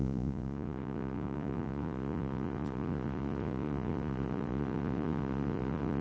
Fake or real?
fake